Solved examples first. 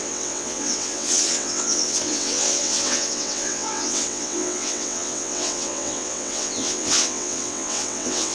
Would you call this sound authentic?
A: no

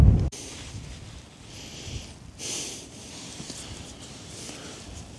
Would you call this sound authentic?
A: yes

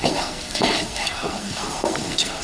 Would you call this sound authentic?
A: no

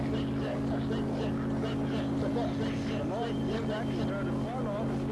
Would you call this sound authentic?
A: yes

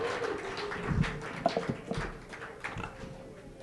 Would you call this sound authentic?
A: yes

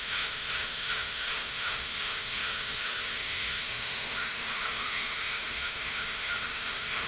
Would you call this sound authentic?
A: no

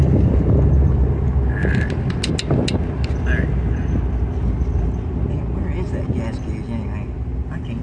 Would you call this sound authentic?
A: yes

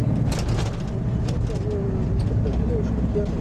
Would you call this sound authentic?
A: yes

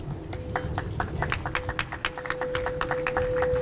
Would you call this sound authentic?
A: yes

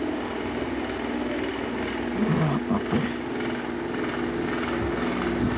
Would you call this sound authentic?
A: yes